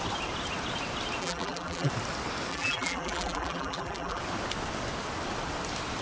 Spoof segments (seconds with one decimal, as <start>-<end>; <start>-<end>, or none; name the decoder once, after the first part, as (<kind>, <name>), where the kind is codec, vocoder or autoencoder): 1.2-1.9 (vocoder, BigVGAN v2); 2.5-4.2